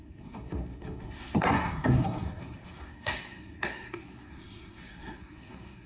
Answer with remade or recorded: remade